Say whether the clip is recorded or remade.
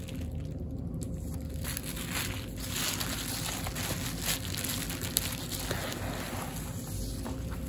recorded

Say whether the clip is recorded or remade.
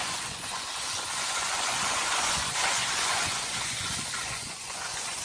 remade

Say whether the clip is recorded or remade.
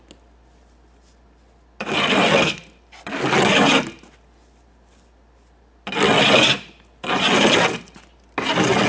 recorded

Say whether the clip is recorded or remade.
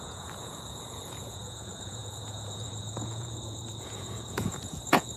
remade